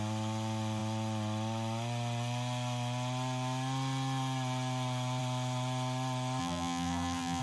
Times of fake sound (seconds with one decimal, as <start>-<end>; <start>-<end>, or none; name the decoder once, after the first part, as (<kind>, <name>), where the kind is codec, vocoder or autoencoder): 6.4-7.4 (vocoder, BigVGAN v2)